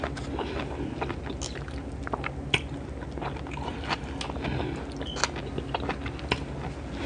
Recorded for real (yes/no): yes